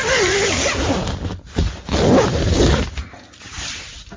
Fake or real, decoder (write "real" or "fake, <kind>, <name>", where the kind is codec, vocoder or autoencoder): real